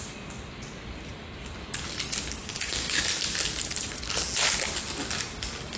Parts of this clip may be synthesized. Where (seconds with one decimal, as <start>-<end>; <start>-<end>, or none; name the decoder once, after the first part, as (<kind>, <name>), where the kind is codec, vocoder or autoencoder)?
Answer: 2.4-3.0 (codec, DAC)